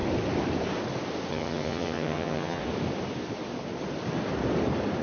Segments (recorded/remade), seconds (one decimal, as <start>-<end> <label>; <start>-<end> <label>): 0.0-1.3 recorded; 1.3-2.6 remade; 2.6-5.0 recorded

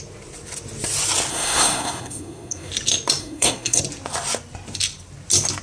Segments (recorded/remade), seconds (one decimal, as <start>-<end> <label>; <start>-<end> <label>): 0.0-1.3 recorded; 1.3-2.7 remade; 2.7-3.2 recorded; 3.2-3.8 remade; 3.8-5.6 recorded

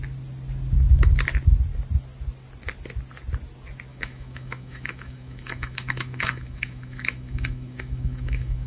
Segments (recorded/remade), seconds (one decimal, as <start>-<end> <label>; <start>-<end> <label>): 0.0-3.9 recorded; 3.9-8.7 remade